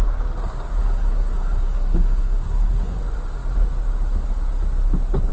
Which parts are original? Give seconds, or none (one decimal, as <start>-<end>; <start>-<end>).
0.0-0.8; 3.0-5.3